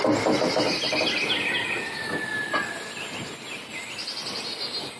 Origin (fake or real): real